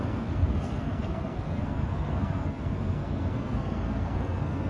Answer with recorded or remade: remade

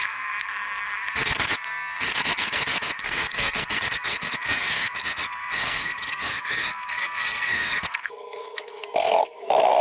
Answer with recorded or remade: remade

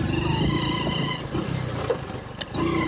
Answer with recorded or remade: recorded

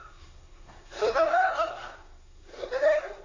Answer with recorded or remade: remade